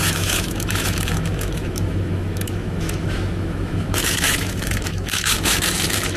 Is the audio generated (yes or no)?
yes